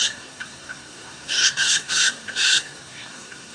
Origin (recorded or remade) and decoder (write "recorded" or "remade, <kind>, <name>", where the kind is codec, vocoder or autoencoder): remade, codec, SNAC